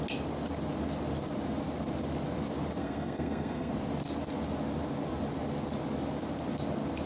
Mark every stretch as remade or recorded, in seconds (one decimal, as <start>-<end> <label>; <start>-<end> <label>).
0.0-2.8 recorded; 2.8-3.7 remade; 3.7-7.1 recorded